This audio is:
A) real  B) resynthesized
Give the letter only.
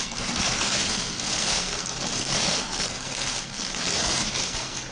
B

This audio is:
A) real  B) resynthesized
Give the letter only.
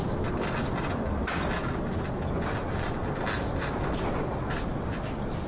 A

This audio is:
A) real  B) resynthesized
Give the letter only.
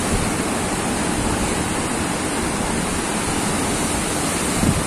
A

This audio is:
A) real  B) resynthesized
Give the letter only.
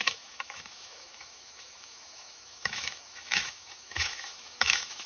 B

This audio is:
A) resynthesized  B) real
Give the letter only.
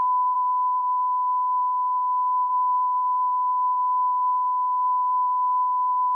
A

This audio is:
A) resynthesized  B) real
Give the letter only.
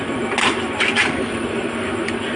B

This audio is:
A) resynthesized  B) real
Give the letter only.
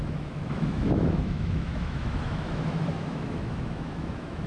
A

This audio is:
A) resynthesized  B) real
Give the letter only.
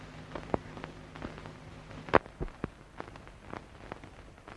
B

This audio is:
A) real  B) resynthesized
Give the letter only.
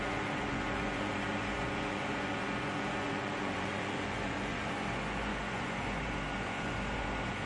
B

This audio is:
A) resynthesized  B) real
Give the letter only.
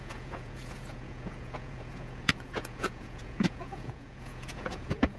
A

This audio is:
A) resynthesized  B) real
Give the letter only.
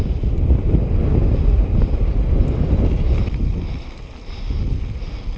B